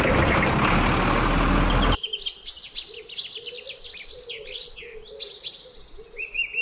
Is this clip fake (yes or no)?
no